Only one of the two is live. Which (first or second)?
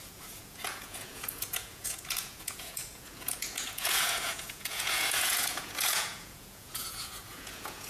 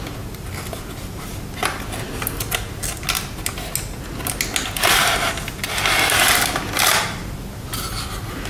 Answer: second